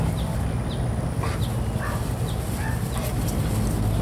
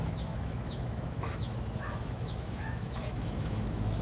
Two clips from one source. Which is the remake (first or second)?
second